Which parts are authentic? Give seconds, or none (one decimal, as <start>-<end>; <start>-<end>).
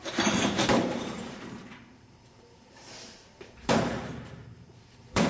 none